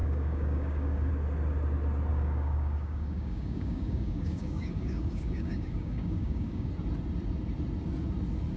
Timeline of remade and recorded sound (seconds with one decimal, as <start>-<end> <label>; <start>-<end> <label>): 0.0-1.1 remade; 1.1-2.1 recorded; 2.1-6.7 remade; 6.7-8.6 recorded